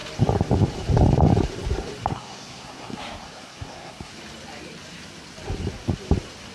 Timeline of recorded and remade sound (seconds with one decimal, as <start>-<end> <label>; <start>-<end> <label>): 0.0-2.1 recorded; 2.1-4.1 remade; 4.1-6.5 recorded